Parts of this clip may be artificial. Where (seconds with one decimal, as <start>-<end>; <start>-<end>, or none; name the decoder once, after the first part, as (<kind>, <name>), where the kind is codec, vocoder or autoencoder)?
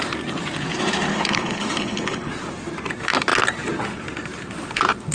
1.1-2.3 (codec, HILCodec)